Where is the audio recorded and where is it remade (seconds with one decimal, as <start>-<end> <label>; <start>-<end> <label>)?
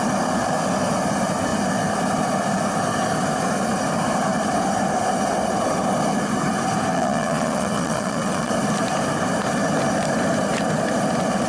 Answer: 0.0-6.9 recorded; 6.9-8.5 remade; 8.5-11.5 recorded